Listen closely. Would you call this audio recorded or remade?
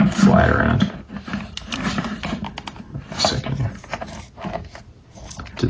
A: recorded